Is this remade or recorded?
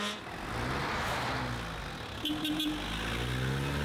recorded